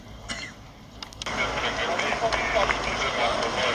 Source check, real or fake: real